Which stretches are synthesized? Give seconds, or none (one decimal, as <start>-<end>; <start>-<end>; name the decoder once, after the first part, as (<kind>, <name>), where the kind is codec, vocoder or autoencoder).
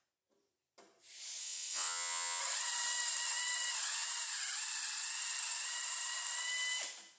1.4-2.4 (vocoder, WaveNeXt)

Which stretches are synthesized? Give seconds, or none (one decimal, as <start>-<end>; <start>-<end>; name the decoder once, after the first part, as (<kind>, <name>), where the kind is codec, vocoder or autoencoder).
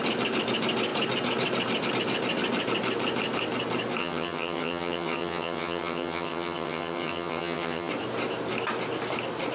4.0-7.9 (vocoder, HiFi-GAN)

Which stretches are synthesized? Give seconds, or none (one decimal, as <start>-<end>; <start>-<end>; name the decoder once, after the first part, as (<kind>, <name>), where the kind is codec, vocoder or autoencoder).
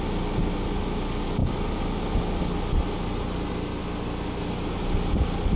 none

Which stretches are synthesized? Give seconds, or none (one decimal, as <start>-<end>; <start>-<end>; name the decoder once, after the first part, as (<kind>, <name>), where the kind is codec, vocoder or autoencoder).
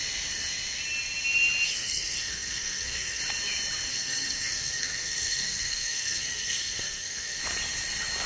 1.7-3.2 (codec, SNAC); 3.9-7.4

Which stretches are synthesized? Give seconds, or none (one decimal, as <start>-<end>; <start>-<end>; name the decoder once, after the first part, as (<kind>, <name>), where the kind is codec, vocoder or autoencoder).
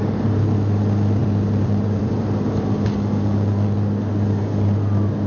1.2-2.1 (vocoder, BigVGAN v2)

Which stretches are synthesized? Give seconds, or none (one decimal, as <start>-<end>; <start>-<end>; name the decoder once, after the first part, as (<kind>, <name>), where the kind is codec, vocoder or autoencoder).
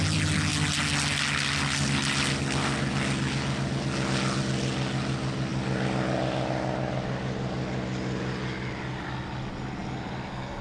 none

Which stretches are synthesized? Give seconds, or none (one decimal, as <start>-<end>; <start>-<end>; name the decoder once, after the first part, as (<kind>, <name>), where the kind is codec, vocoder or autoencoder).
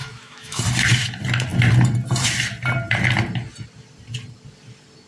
0.0-0.6 (autoencoder, DAC-VAE)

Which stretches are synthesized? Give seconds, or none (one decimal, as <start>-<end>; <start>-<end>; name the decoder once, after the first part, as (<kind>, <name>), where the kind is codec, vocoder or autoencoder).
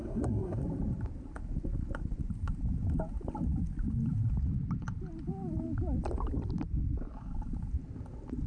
0.0-0.6 (codec, SNAC)